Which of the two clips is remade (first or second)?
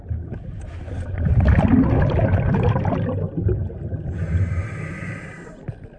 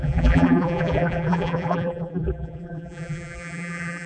second